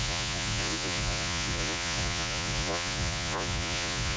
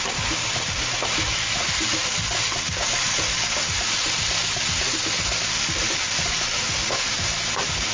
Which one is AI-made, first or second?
first